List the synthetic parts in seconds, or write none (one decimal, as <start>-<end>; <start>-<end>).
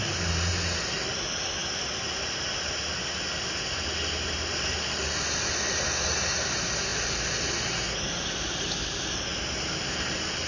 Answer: none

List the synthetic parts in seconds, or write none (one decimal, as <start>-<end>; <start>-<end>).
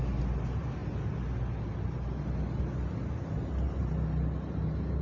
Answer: none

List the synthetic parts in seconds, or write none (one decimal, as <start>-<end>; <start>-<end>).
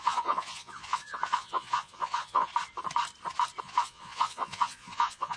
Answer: 0.0-2.5; 3.6-5.4